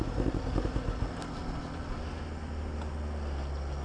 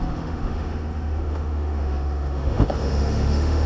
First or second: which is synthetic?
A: second